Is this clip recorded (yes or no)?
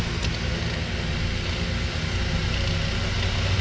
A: yes